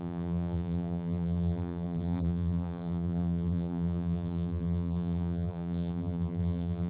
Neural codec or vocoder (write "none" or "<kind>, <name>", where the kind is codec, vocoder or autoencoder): vocoder, BigVGAN v2